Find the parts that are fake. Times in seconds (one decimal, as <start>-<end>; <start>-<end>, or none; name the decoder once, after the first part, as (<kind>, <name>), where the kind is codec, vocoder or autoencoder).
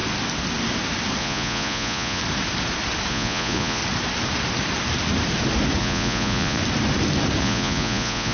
1.2-2.2 (vocoder, Vocos); 3.1-3.8; 5.8-6.6; 7.4-8.3